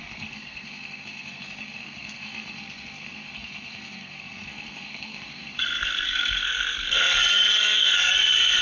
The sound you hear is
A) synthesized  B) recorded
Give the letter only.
A